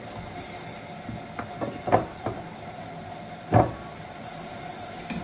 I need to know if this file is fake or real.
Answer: real